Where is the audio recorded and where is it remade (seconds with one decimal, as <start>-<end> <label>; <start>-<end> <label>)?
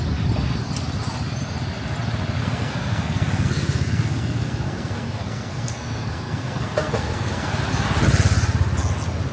0.0-2.4 recorded; 2.4-7.6 remade; 7.6-9.3 recorded